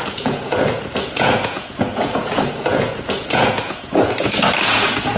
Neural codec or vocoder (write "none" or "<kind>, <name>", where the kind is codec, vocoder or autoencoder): vocoder, Vocos